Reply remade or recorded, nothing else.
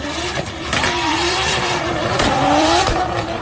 remade